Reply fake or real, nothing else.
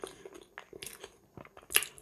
real